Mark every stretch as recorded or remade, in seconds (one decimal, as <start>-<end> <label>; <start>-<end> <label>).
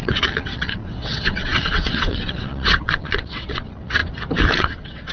0.0-4.0 remade; 4.0-4.5 recorded; 4.5-5.1 remade